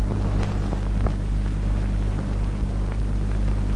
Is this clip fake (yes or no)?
no